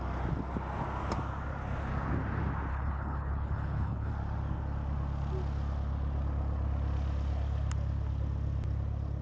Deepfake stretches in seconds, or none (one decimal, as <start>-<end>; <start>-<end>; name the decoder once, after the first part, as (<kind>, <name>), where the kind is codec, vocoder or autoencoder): 2.7-4.1 (codec, HILCodec)